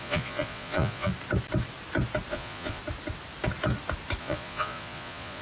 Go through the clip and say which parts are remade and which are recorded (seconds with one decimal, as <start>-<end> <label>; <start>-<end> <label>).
0.0-1.1 remade; 1.1-2.3 recorded; 2.3-2.8 remade; 2.8-4.2 recorded; 4.2-5.4 remade